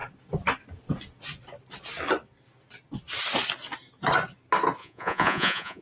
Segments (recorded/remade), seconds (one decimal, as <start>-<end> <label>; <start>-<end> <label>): 0.0-4.8 recorded; 4.8-5.8 remade